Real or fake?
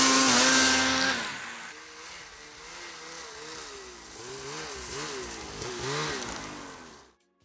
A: real